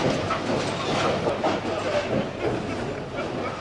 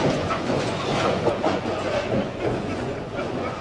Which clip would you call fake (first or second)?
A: second